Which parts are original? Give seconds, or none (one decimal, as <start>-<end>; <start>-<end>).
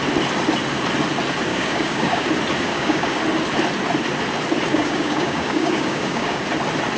0.0-1.5; 2.3-2.7; 3.2-4.7; 6.4-7.0